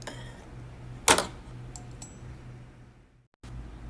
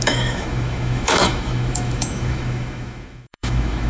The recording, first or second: first